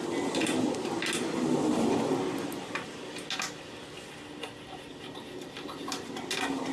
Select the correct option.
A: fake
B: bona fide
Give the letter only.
B